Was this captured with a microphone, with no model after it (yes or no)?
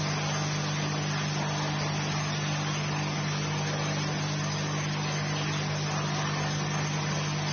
yes